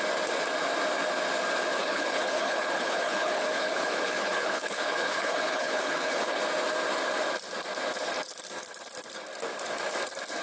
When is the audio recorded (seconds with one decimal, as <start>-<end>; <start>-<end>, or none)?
0.0-1.8; 6.4-10.4